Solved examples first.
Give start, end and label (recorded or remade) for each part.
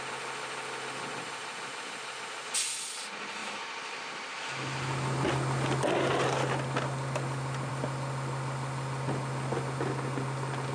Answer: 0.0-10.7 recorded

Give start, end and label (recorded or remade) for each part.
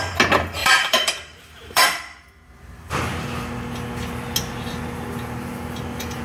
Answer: 0.0-0.6 recorded; 0.6-2.9 remade; 2.9-6.2 recorded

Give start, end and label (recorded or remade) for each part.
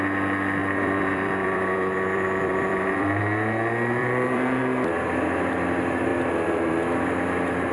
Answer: 0.0-0.6 recorded; 0.6-3.2 remade; 3.2-4.0 recorded; 4.0-4.6 remade; 4.6-6.1 recorded; 6.1-6.7 remade; 6.7-7.7 recorded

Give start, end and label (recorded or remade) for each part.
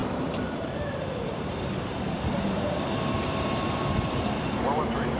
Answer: 0.0-5.2 remade